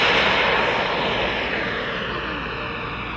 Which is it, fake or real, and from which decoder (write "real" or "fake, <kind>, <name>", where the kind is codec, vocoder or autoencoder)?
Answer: real